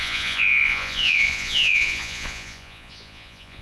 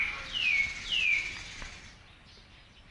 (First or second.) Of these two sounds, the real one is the second